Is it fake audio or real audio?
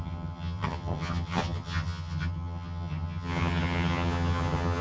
fake